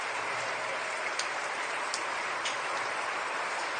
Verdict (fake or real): fake